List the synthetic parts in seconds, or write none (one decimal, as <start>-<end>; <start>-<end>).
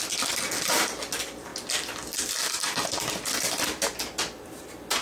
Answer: none